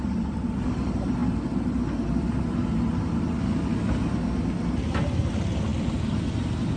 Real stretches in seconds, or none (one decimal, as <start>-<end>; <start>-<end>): 0.0-6.8